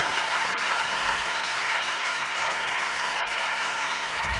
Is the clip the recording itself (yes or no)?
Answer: no